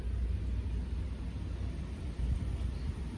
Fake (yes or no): no